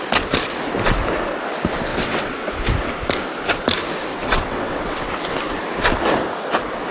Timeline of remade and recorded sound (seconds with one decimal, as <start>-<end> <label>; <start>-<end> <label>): 0.0-1.9 recorded; 1.9-2.5 remade; 2.5-4.1 recorded; 4.1-5.1 remade; 5.1-6.9 recorded